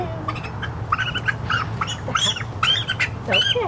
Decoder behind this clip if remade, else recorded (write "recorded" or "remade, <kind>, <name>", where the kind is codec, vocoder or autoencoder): recorded